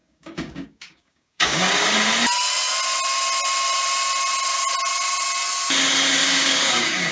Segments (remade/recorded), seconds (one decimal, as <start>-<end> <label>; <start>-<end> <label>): 0.0-1.9 remade; 1.9-6.2 recorded; 6.2-7.1 remade